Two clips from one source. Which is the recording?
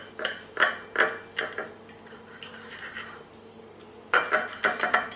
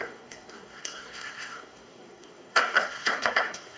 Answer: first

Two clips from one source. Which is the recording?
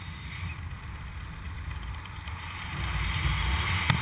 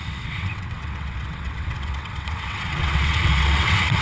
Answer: first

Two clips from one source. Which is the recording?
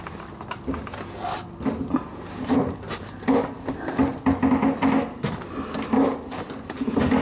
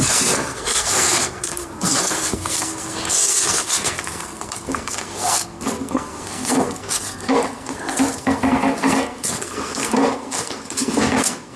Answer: first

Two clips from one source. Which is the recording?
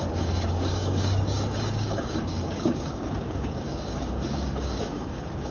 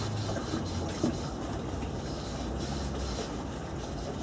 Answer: second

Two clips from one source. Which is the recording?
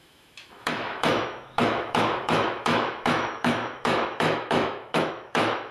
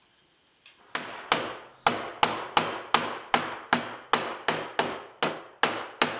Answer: second